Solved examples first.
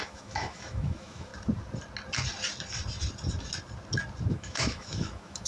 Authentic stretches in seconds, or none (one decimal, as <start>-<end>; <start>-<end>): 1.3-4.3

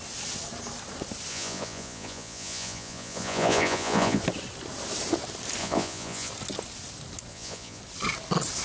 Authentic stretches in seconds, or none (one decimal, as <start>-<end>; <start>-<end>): 0.0-1.3; 4.2-5.6; 6.3-7.3; 7.8-8.6

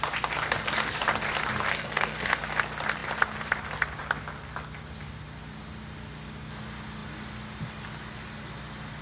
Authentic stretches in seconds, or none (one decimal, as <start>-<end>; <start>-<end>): 0.0-1.7; 2.4-9.0